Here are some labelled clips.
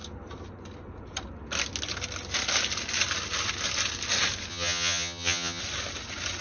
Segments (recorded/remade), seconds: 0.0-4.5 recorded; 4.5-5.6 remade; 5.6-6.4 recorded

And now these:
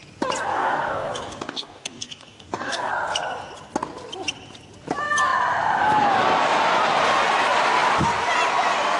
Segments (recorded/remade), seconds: 0.0-0.5 recorded; 0.5-2.9 remade; 2.9-9.0 recorded

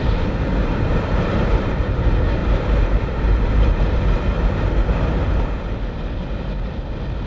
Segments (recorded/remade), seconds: 0.0-0.6 recorded; 0.6-2.0 remade; 2.0-2.4 recorded; 2.4-4.0 remade; 4.0-7.3 recorded

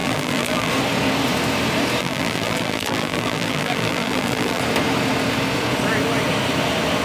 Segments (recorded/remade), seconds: 0.0-0.7 remade; 0.7-2.0 recorded; 2.0-4.6 remade; 4.6-7.0 recorded

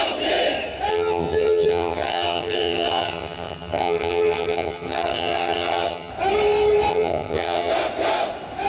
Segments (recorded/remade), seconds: 0.0-0.9 recorded; 0.9-6.1 remade; 6.1-6.9 recorded; 6.9-7.7 remade; 7.7-8.7 recorded

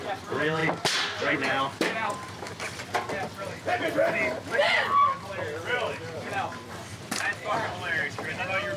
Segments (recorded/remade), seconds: 0.0-8.8 remade